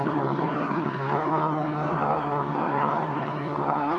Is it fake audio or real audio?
fake